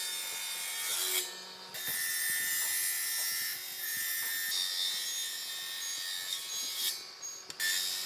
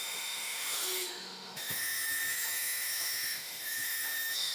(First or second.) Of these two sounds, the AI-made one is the second